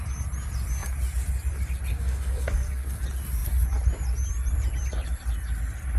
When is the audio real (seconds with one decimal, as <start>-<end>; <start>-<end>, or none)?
0.0-1.9; 3.0-6.0